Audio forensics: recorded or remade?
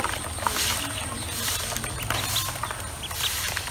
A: remade